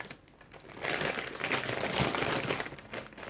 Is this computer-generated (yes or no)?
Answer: no